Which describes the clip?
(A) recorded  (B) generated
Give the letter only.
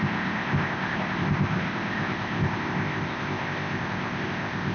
B